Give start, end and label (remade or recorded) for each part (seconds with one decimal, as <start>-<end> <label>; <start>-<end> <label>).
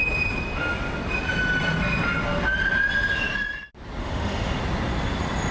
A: 0.0-4.0 recorded; 4.0-4.6 remade; 4.6-5.5 recorded